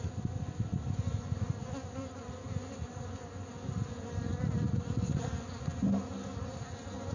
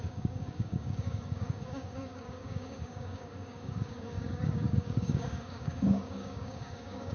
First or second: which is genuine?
first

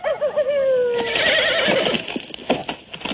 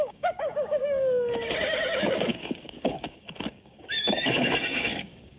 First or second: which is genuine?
first